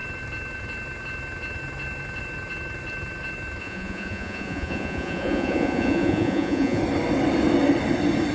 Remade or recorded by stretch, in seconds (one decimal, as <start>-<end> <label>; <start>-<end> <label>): 0.0-3.6 recorded; 3.6-6.8 remade; 6.8-8.3 recorded